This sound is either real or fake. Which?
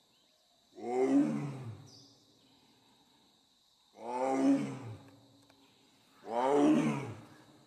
real